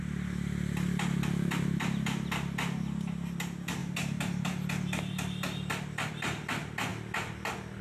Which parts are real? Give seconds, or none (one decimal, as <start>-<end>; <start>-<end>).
0.0-7.8